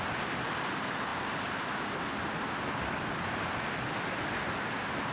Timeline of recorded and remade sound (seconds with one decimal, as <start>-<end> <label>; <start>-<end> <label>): 0.0-5.1 recorded